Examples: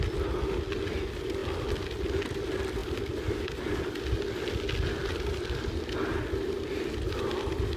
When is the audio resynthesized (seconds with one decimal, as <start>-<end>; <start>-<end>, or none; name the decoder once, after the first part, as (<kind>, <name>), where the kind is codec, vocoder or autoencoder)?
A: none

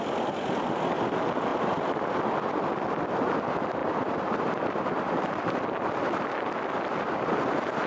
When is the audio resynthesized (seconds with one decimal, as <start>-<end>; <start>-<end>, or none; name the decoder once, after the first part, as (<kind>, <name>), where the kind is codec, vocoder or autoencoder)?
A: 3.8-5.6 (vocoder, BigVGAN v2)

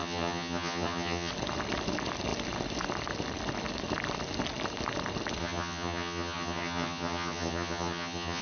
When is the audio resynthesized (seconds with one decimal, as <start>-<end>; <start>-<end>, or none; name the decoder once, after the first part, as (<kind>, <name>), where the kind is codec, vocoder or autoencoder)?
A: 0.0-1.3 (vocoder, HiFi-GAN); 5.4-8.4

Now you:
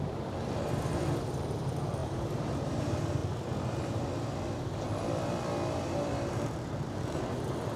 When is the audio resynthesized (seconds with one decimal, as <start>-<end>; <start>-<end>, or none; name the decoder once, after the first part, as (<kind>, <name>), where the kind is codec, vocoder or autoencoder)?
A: 0.0-3.2 (vocoder, BigVGAN v2); 6.3-7.8